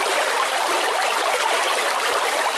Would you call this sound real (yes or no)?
yes